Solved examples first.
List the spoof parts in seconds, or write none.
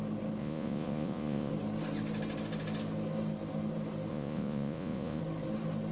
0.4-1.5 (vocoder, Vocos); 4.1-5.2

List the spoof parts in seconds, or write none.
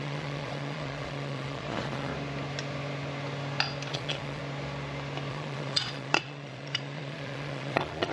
0.0-2.1 (vocoder, Vocos); 3.9-4.4; 5.3-8.1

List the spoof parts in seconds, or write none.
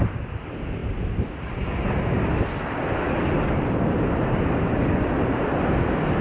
none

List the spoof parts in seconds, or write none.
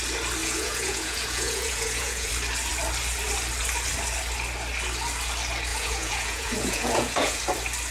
0.4-2.3 (vocoder, Vocos); 5.7-7.4